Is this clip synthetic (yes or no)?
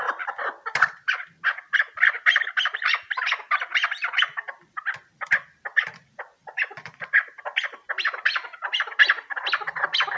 no